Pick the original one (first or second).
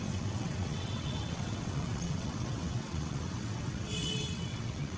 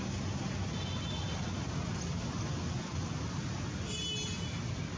second